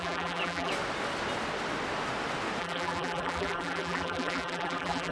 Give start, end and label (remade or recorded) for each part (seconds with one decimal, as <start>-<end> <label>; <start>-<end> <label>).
0.0-0.7 remade; 0.7-2.6 recorded; 2.6-5.1 remade